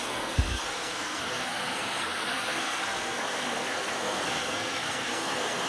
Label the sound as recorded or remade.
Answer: remade